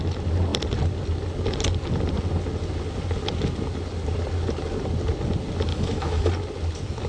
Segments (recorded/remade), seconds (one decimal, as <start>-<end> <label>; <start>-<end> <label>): 0.0-5.7 recorded; 5.7-6.3 remade; 6.3-7.1 recorded